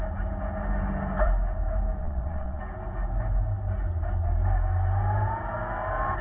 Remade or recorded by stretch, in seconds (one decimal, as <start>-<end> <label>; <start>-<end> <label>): 0.0-2.0 recorded; 2.0-2.6 remade; 2.6-6.2 recorded